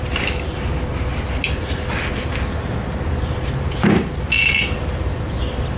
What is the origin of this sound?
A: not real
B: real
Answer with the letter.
B